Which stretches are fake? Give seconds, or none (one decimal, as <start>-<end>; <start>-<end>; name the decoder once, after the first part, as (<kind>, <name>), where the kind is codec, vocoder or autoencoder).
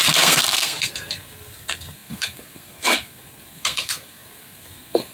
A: 0.0-5.1 (codec, SNAC)